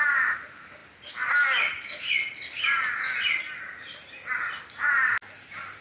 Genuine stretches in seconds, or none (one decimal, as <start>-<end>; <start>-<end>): 0.0-5.8